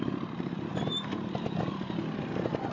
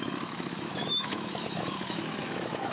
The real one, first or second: first